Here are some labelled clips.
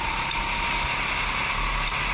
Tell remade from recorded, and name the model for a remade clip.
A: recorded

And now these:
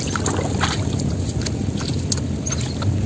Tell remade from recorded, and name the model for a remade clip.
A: recorded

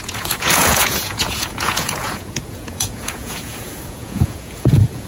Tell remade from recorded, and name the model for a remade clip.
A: remade, vocoder, Vocos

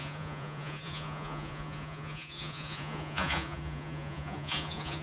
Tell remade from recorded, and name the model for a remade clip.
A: remade, vocoder, Vocos